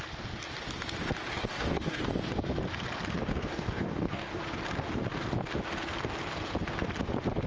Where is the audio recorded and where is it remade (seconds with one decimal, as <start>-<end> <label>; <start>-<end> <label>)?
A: 0.0-1.3 recorded; 1.3-2.1 remade; 2.1-3.2 recorded; 3.2-4.4 remade; 4.4-7.5 recorded